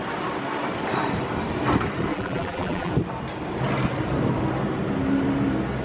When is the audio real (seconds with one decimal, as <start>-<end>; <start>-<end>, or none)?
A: 0.0-2.1; 2.9-5.8